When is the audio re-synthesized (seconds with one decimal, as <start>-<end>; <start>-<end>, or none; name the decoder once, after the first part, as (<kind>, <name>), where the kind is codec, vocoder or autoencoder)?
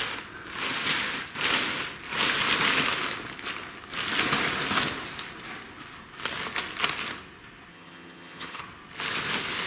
7.7-8.6 (vocoder, HiFi-GAN)